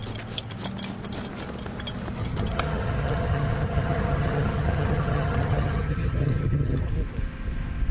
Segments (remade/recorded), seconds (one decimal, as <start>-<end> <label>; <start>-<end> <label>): 0.0-2.2 recorded; 2.2-6.9 remade; 6.9-7.9 recorded